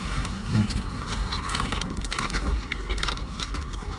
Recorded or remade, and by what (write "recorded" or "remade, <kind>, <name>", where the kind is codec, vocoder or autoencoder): remade, codec, SNAC